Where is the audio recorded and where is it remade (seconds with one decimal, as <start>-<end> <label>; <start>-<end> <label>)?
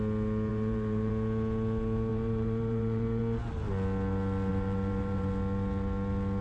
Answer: 0.0-0.5 recorded; 0.5-1.1 remade; 1.1-2.1 recorded; 2.1-3.2 remade; 3.2-4.5 recorded; 4.5-5.3 remade; 5.3-6.4 recorded